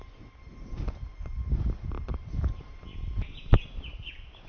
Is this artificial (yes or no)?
no